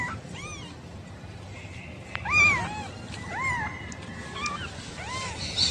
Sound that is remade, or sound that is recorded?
recorded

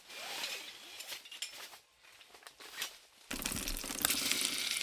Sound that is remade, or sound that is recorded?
recorded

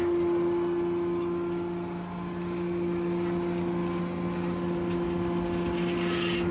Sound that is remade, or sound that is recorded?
recorded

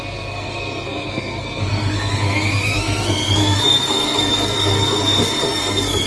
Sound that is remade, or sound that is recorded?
remade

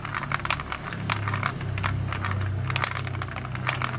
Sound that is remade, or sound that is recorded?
recorded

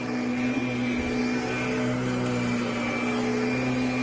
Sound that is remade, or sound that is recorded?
recorded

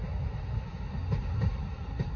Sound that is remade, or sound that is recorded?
recorded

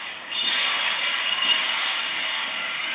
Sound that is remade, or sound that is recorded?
remade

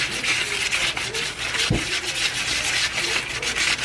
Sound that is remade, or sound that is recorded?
recorded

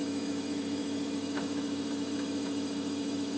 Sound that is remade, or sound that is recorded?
remade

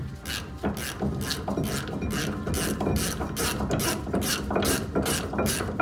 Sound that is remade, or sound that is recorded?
recorded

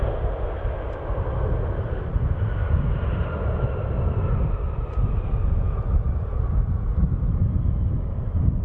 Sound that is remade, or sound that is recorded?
recorded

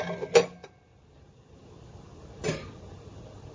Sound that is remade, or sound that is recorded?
recorded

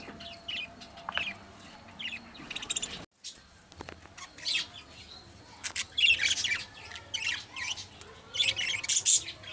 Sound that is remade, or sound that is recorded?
recorded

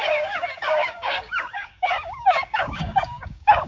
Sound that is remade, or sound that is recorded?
remade